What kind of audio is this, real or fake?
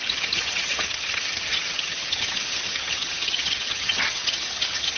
fake